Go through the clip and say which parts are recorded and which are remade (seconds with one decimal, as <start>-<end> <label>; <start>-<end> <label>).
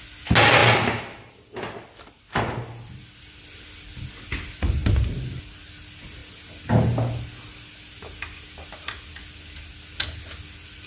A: 0.0-10.9 recorded